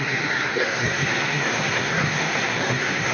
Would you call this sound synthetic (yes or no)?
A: yes